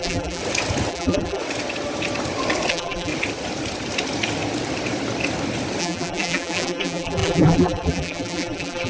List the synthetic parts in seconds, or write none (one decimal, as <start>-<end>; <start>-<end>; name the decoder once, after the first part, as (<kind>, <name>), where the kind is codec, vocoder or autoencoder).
0.0-0.4 (vocoder, BigVGAN v2); 0.9-1.4; 2.7-3.1; 5.8-8.9